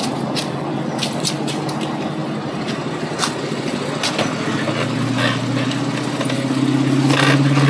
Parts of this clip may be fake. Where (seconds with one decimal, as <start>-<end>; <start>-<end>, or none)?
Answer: none

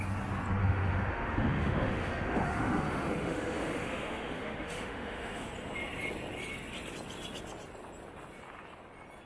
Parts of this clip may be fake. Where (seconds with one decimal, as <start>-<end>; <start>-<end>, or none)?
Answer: 0.6-5.5

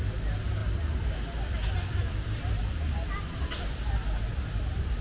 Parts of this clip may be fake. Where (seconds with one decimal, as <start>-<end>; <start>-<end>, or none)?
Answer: none

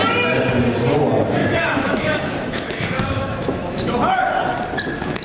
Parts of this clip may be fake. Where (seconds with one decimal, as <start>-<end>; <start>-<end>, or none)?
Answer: 1.4-4.2

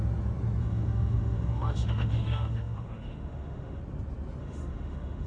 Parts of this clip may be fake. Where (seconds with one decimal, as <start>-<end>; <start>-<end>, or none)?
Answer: 0.6-3.8; 4.4-5.3